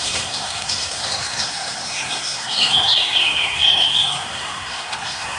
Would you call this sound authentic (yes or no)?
no